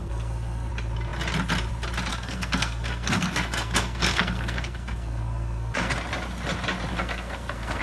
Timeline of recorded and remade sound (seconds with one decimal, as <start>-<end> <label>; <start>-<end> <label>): 0.0-0.7 remade; 0.7-2.1 recorded; 2.1-5.9 remade; 5.9-6.9 recorded; 6.9-7.8 remade